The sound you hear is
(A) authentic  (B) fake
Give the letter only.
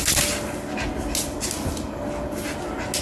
A